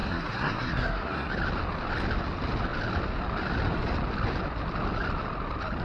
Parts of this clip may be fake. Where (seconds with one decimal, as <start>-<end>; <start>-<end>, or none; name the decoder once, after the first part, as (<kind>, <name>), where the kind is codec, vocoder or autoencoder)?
0.0-1.3 (codec, SNAC)